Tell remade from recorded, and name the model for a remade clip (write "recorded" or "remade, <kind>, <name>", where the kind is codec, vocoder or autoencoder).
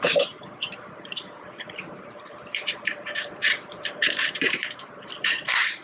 remade, vocoder, BigVGAN v2